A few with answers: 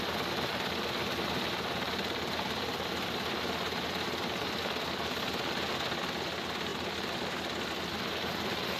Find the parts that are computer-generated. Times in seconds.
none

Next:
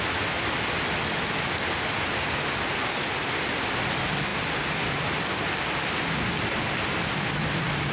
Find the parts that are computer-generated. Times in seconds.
none